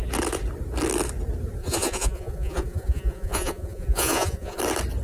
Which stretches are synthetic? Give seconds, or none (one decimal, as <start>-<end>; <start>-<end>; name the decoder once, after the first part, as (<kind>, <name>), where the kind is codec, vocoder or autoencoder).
1.6-4.6 (vocoder, Vocos)